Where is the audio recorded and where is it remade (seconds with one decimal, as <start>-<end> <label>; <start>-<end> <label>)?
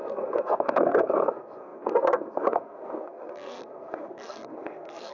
0.0-5.1 remade